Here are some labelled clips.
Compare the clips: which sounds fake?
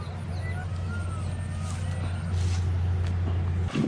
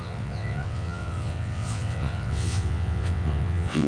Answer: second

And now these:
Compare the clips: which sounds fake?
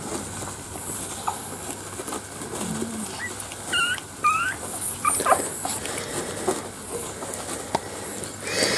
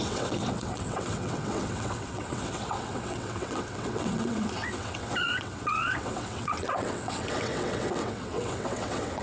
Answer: second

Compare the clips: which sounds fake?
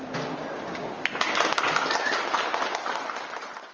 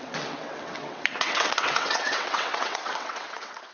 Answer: second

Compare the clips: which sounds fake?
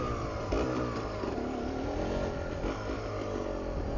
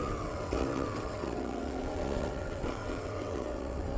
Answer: second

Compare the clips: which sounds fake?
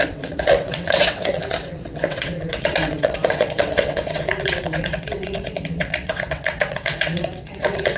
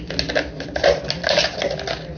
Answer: first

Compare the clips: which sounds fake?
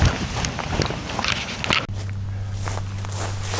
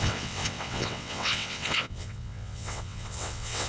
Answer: second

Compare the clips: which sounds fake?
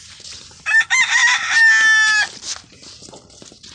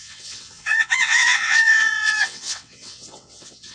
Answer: second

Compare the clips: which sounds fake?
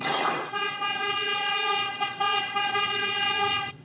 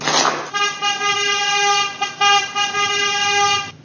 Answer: first